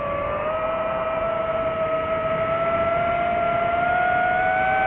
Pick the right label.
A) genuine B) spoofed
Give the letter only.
A